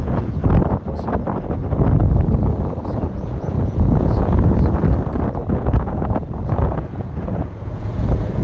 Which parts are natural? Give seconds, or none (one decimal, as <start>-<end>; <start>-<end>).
0.4-3.1; 4.8-5.5